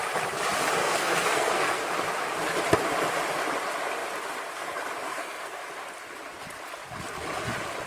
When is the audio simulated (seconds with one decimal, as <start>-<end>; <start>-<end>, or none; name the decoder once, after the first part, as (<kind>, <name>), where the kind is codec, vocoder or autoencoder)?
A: 0.8-1.8 (codec, SNAC); 5.1-5.6